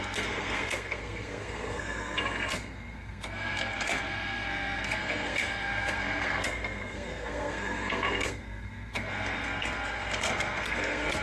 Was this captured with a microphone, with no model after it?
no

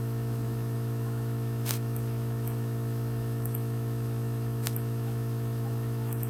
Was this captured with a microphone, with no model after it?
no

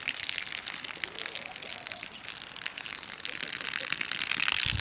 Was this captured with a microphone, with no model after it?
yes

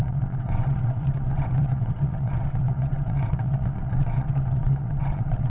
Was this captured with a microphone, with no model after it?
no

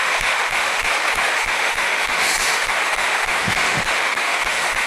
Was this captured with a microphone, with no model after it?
no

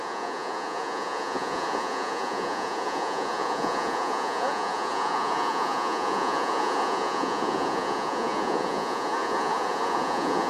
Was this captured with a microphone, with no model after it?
no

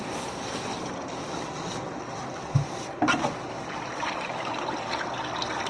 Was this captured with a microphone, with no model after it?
yes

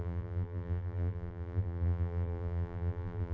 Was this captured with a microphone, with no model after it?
no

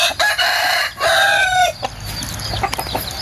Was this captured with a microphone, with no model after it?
yes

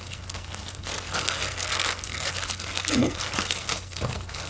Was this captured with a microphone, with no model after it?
no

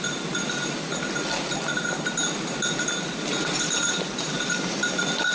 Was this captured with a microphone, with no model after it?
yes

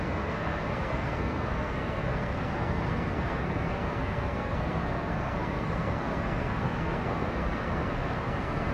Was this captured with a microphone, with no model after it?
no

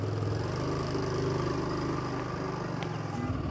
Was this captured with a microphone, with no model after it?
yes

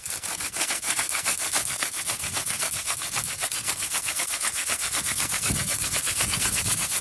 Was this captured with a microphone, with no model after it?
no